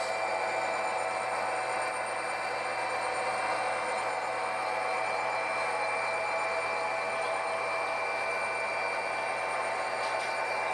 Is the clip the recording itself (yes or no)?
yes